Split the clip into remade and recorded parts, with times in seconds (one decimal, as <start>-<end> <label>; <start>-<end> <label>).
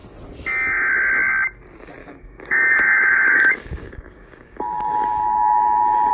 0.0-2.0 recorded; 2.0-6.1 remade